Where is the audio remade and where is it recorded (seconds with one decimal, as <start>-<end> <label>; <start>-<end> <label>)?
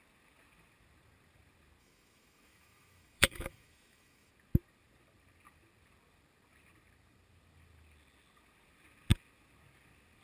0.0-1.8 recorded; 1.8-4.3 remade; 4.3-10.2 recorded